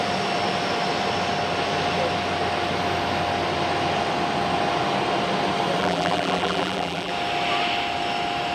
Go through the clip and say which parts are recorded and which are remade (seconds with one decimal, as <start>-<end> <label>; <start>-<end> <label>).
0.0-5.8 recorded; 5.8-7.1 remade; 7.1-8.5 recorded